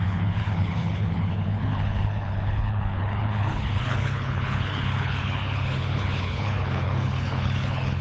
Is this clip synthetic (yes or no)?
yes